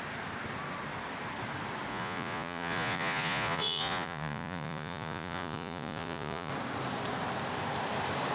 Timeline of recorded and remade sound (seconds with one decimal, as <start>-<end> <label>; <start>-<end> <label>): 0.0-1.9 recorded; 1.9-6.5 remade; 6.5-8.3 recorded